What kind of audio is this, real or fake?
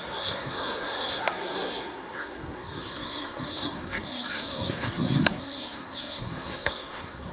fake